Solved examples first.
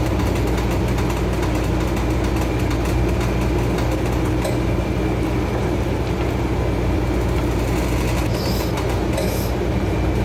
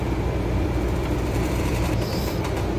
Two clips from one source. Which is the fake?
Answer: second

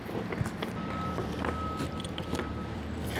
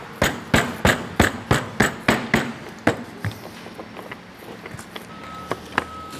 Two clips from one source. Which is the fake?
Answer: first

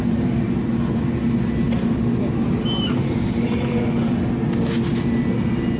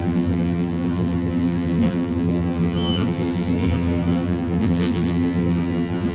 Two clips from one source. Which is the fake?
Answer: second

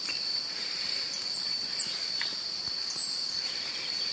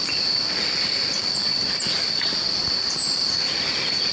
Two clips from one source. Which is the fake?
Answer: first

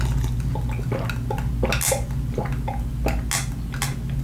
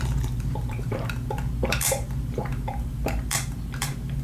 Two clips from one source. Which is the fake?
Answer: second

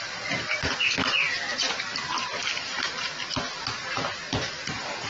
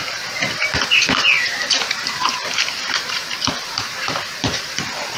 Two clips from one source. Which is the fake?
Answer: second